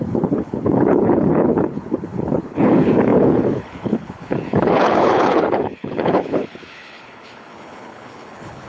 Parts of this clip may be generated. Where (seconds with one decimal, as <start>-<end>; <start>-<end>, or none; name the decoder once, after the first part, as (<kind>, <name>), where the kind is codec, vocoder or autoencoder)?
0.0-8.7 (codec, HILCodec)